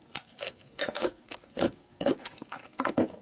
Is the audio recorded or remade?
remade